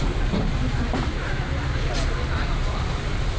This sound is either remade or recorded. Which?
recorded